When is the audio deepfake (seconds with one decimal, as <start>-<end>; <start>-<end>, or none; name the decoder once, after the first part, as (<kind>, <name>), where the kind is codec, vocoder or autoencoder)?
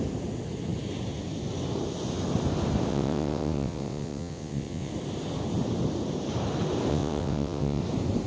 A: 2.9-4.9 (vocoder, WaveNeXt); 6.9-7.8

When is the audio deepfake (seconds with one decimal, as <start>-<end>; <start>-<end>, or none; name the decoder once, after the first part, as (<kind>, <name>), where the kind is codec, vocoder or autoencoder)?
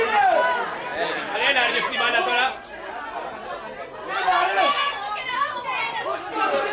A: none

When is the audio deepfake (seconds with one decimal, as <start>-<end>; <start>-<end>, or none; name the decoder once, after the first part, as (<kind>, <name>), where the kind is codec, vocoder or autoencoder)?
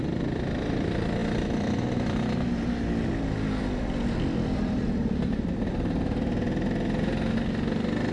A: none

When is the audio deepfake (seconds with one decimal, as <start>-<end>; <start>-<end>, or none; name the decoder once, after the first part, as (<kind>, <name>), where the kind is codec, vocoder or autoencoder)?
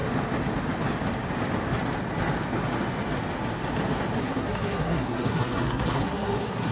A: 4.2-6.7 (codec, SNAC)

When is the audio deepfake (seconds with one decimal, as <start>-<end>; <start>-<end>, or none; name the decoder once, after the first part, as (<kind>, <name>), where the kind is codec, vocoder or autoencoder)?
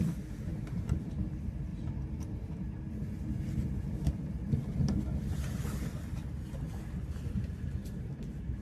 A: 0.5-1.2 (vocoder, BigVGAN v2); 7.8-8.6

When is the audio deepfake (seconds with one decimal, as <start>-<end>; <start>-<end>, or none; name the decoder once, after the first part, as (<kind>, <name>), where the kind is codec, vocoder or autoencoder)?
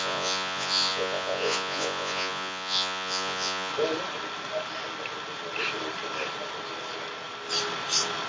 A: 0.0-3.7 (vocoder, Vocos)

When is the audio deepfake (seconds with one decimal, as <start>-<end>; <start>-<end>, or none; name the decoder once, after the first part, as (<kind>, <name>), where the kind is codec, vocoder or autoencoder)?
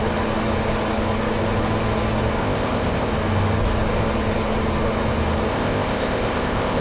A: 2.4-3.1 (codec, ZipCodec); 5.5-6.8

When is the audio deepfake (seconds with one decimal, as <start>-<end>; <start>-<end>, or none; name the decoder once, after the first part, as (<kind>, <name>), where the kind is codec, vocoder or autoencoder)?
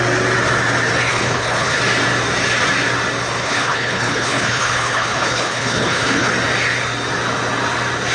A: 1.1-1.8 (codec, HILCodec); 3.4-6.3